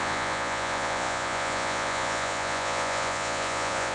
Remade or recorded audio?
remade